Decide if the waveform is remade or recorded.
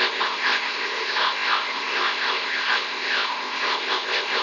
remade